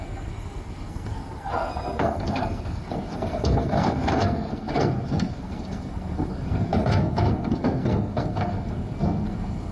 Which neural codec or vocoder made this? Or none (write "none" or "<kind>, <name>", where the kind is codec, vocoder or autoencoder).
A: codec, SNAC